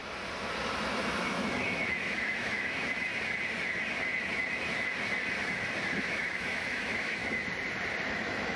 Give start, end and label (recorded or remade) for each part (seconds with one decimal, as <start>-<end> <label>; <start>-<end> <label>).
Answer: 0.0-1.2 recorded; 1.2-3.1 remade; 3.1-6.0 recorded; 6.0-7.2 remade; 7.2-8.1 recorded; 8.1-8.6 remade